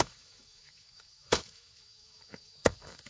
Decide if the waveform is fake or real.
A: fake